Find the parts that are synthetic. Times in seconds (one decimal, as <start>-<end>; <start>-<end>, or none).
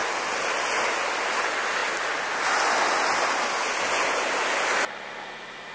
none